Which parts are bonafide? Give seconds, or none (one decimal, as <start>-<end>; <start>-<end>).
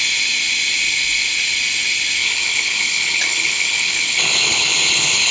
0.0-2.2